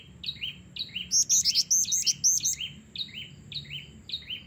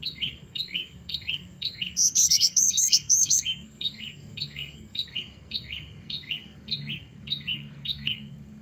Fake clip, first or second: second